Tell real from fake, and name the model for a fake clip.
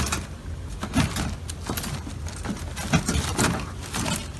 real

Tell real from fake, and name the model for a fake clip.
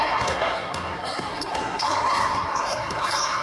fake, codec, SNAC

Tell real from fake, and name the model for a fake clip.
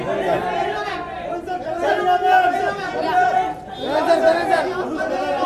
real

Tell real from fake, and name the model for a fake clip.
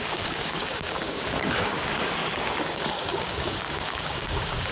fake, codec, DAC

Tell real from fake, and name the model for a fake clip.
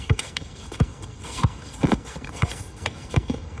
fake, codec, SNAC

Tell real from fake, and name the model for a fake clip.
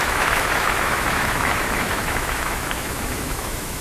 fake, autoencoder, DAC-VAE